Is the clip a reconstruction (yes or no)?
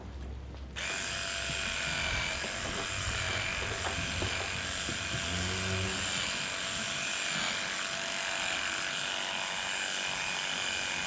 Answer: no